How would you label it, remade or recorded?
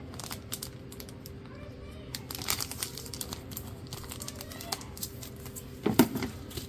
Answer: recorded